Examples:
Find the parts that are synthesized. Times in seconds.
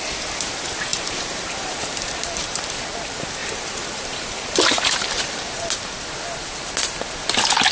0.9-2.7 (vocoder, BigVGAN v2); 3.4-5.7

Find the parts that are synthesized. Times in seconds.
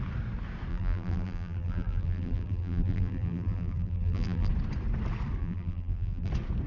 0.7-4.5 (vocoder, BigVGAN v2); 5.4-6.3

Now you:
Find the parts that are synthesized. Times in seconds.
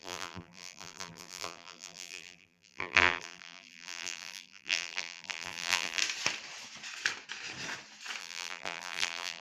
0.0-6.0 (vocoder, BigVGAN v2); 8.2-9.4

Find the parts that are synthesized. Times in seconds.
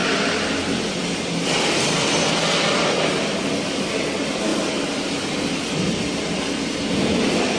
0.0-0.6 (vocoder, BigVGAN v2)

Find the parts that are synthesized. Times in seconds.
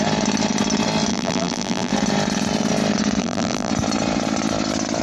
1.1-1.9 (vocoder, BigVGAN v2); 3.2-3.7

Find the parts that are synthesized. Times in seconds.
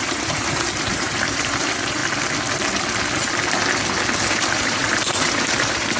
0.0-2.0 (vocoder, BigVGAN v2); 4.3-6.0